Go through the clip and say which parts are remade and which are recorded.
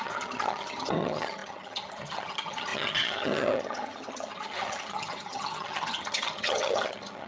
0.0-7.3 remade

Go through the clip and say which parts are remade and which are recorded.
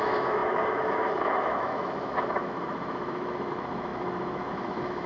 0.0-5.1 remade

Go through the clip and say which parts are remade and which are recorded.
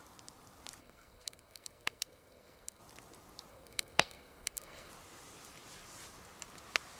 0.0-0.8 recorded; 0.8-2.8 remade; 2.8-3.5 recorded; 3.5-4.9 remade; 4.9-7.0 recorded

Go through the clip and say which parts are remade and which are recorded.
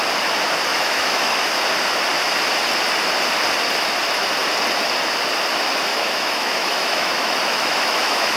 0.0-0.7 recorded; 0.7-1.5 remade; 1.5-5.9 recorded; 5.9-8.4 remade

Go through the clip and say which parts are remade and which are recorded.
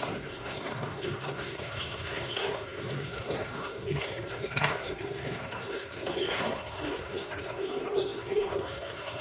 0.0-9.2 remade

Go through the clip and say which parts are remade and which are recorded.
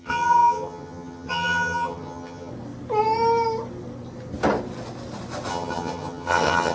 0.0-2.5 remade; 2.5-5.5 recorded; 5.5-6.7 remade